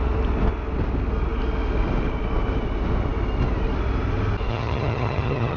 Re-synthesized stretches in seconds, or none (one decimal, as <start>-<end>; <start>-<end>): 4.5-5.6